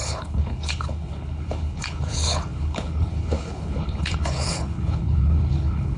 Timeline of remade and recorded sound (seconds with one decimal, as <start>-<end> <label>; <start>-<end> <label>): 0.0-6.0 remade